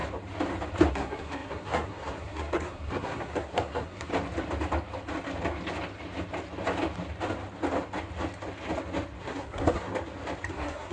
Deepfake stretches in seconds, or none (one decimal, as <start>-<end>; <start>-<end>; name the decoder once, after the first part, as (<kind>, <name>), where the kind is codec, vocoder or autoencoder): 0.9-4.1 (codec, SNAC); 9.2-9.9; 10.5-10.9